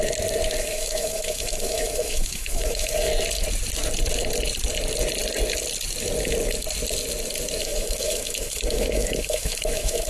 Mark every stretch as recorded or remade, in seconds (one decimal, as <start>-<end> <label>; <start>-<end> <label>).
0.0-0.6 recorded; 0.6-3.1 remade; 3.1-7.6 recorded; 7.6-10.1 remade